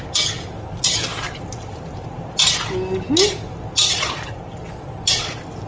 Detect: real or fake real